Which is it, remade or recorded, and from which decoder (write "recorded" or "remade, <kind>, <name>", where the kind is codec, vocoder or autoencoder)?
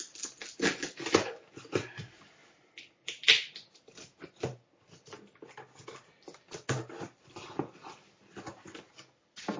recorded